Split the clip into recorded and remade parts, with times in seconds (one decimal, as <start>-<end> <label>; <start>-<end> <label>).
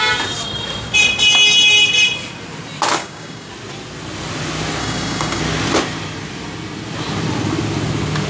0.0-3.0 recorded; 3.0-3.5 remade; 3.5-4.8 recorded; 4.8-5.4 remade; 5.4-8.3 recorded